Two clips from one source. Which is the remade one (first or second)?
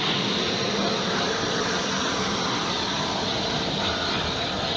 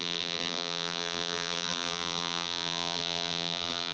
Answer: second